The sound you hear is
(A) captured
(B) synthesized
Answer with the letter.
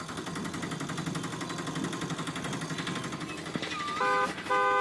A